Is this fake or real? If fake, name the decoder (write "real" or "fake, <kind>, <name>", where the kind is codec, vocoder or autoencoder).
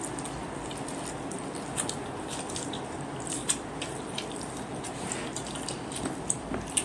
real